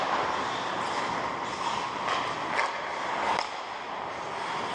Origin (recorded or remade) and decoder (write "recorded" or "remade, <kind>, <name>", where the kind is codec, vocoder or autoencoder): recorded